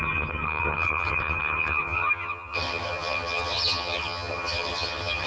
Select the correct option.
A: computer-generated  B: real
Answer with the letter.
A